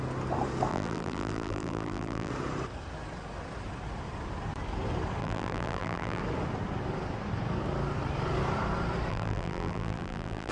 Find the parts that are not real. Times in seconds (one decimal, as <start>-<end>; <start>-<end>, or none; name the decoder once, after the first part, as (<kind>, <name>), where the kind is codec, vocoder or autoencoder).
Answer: 0.7-2.3 (vocoder, BigVGAN v2); 5.2-6.2; 9.1-10.5